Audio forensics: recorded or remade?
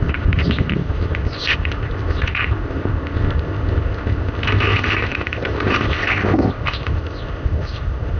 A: remade